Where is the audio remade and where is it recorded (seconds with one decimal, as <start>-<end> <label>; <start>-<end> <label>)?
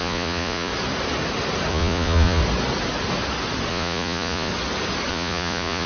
0.0-0.7 remade; 0.7-1.7 recorded; 1.7-2.4 remade; 2.4-3.7 recorded; 3.7-4.5 remade; 4.5-5.1 recorded; 5.1-5.9 remade